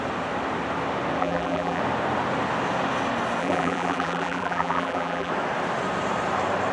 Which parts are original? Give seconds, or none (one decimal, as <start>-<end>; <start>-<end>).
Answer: 0.0-1.2; 1.8-3.4; 5.3-6.7